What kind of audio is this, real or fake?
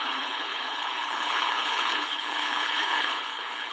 fake